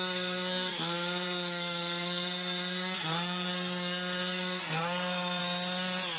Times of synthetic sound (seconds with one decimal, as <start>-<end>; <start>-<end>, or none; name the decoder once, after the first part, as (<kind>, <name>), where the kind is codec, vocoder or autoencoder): 0.0-5.4 (codec, SNAC)